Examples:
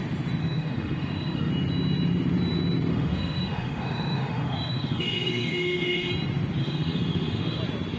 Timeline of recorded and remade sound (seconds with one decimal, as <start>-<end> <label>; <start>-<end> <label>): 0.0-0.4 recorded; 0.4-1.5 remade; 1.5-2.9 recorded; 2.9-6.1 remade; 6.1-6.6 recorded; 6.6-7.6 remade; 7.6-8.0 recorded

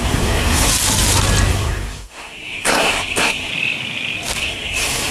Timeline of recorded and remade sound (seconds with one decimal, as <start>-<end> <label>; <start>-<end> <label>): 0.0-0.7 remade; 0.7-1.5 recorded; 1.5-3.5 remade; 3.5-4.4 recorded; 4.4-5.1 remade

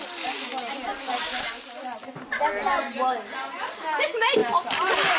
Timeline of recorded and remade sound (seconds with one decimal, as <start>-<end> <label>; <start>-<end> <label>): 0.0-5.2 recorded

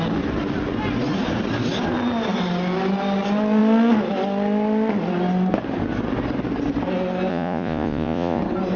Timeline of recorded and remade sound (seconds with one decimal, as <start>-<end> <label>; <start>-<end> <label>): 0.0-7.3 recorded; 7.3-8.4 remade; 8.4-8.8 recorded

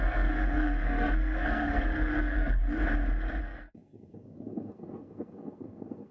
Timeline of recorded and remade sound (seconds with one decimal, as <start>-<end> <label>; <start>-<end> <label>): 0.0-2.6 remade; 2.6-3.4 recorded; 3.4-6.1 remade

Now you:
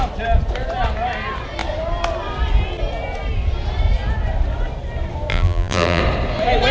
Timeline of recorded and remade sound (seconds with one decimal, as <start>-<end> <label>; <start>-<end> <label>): 0.0-5.3 recorded; 5.3-6.0 remade; 6.0-6.7 recorded